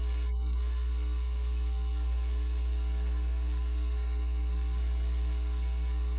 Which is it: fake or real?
fake